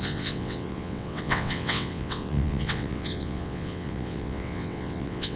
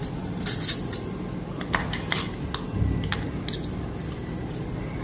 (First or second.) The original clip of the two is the second